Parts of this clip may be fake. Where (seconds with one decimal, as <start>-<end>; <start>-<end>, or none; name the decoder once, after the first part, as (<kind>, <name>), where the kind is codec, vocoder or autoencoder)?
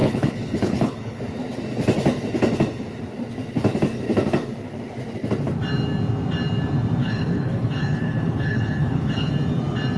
0.0-1.2 (codec, HILCodec); 7.0-9.3